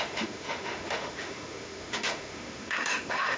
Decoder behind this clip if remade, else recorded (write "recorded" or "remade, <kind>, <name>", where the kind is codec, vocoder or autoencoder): remade, autoencoder, DAC-VAE